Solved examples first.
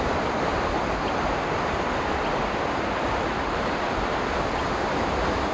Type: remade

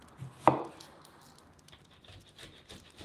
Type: remade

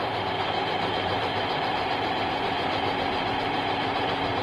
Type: remade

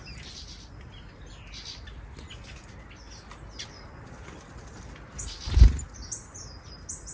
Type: recorded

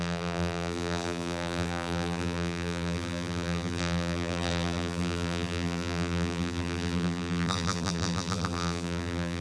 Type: remade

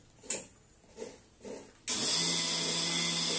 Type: recorded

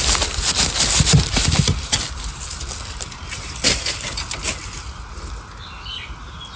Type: recorded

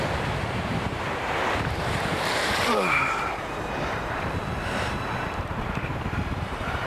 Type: remade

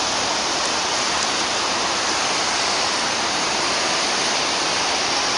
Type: remade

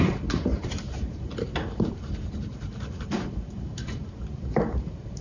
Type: remade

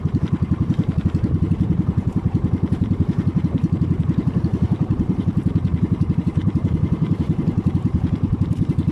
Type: remade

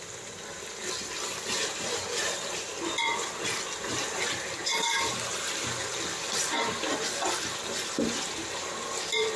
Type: remade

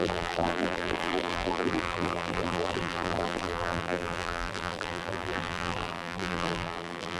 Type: remade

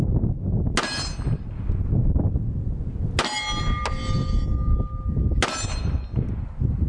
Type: recorded